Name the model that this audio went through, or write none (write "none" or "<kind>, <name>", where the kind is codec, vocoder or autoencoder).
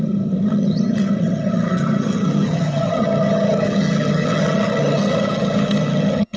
vocoder, HiFi-GAN